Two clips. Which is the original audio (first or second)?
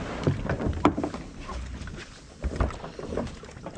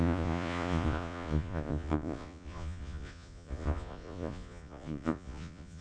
first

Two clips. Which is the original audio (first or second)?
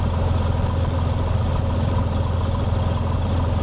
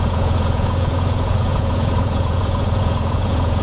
first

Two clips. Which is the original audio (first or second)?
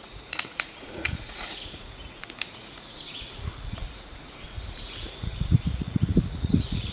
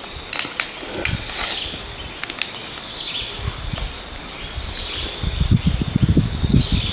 second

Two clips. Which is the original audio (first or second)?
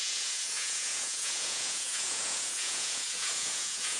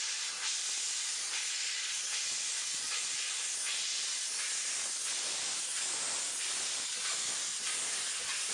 second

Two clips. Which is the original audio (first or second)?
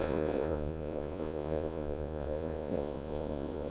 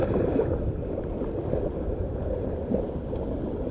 second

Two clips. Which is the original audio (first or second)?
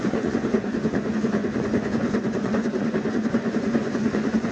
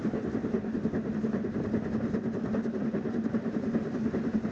second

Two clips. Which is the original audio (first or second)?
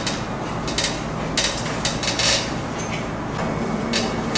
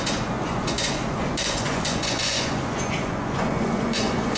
first